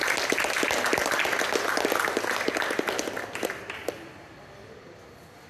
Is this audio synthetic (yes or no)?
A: no